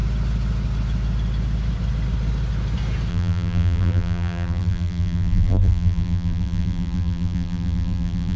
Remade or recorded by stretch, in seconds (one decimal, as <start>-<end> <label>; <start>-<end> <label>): 0.0-3.1 recorded; 3.1-8.4 remade